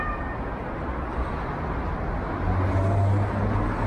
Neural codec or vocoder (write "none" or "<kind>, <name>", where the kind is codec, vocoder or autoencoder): none